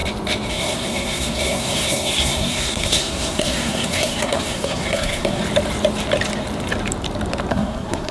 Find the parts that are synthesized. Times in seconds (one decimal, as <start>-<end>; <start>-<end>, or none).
0.5-5.4; 7.5-8.1